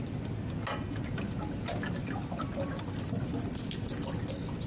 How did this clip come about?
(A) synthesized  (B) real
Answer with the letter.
B